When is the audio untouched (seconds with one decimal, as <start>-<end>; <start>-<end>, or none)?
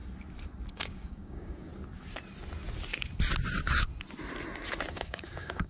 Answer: 0.0-0.7; 1.7-4.9